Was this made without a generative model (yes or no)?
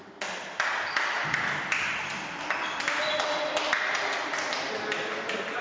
yes